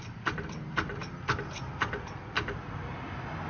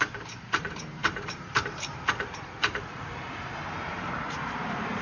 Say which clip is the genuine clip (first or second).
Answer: first